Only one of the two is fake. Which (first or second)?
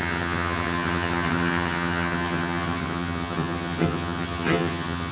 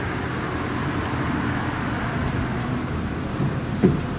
first